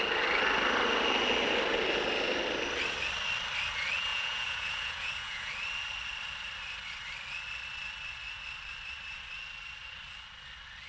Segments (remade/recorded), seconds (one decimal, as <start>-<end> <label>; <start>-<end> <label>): 0.0-4.1 recorded; 4.1-5.5 remade; 5.5-10.9 recorded